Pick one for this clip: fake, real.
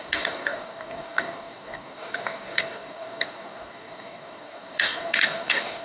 fake